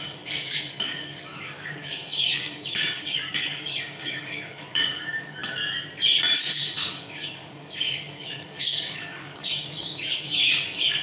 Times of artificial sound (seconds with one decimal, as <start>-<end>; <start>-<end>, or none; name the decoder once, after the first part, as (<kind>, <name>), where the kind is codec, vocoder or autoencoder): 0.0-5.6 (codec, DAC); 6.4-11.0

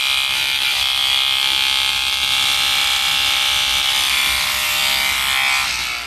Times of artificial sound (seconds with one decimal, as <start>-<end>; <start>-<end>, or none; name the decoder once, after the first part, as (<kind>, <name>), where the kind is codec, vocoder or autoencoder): 0.0-1.0 (vocoder, BigVGAN v2); 1.9-4.8

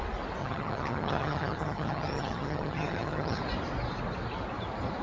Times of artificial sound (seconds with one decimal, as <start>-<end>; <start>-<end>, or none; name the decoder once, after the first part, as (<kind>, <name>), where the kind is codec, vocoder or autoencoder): 0.4-3.4 (vocoder, HiFi-GAN)

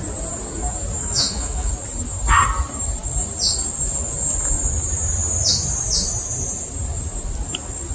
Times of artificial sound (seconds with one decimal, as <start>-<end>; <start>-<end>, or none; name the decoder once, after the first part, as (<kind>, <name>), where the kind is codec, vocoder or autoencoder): 1.0-1.7 (autoencoder, DAC-VAE)

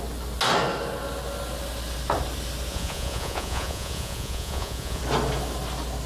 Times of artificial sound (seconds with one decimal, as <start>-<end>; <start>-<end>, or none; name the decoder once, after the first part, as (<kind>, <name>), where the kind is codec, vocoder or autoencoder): 2.7-5.0 (vocoder, Vocos)